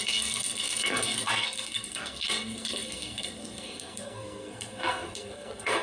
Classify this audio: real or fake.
fake